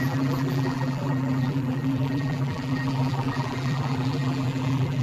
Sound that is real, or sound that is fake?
fake